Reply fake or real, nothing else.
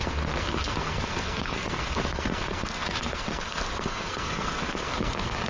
fake